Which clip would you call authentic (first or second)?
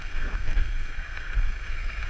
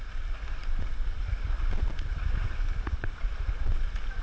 second